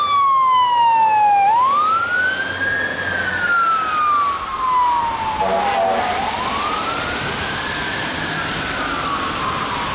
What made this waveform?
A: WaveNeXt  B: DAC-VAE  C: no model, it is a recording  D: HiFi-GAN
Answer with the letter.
C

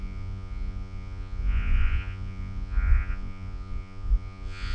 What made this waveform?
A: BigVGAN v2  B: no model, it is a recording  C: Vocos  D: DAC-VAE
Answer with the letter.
C